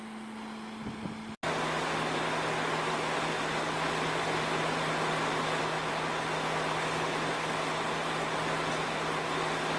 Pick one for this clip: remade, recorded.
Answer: recorded